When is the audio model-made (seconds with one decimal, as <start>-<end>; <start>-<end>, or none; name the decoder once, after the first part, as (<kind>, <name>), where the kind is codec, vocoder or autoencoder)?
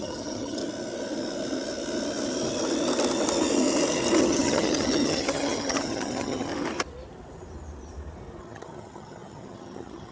0.0-0.6 (vocoder, HiFi-GAN); 4.2-6.5; 8.4-10.1